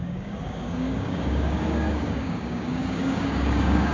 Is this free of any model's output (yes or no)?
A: no